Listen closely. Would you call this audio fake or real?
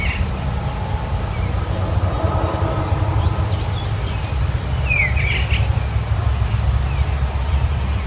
real